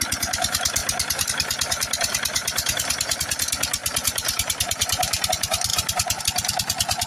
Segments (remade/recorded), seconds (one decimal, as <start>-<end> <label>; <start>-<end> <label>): 0.0-0.8 recorded; 0.8-1.3 remade; 1.3-2.4 recorded; 2.4-3.2 remade; 3.2-3.8 recorded; 3.8-5.3 remade; 5.3-5.7 recorded; 5.7-6.2 remade; 6.2-7.1 recorded